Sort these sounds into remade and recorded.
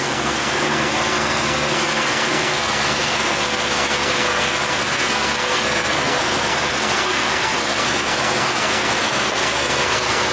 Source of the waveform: remade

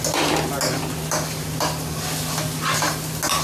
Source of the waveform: recorded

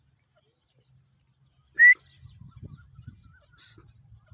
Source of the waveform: recorded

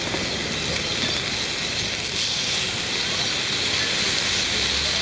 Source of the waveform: recorded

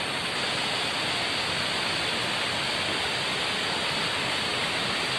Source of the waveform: recorded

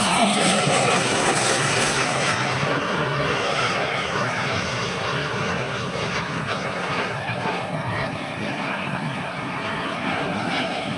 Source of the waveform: remade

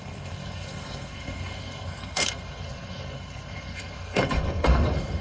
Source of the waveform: remade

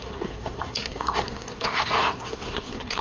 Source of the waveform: remade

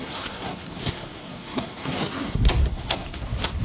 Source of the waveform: remade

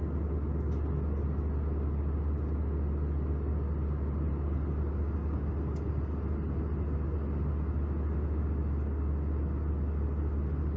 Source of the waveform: recorded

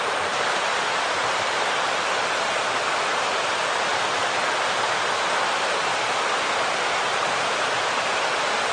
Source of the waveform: recorded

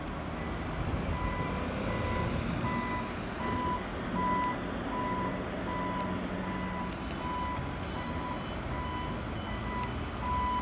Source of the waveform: recorded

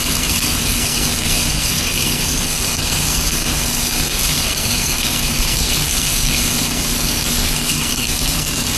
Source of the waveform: remade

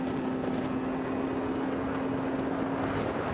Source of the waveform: recorded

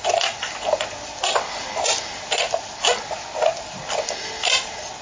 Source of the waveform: recorded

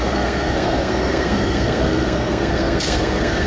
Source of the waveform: remade